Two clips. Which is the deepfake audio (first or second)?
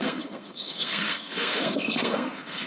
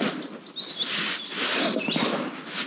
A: first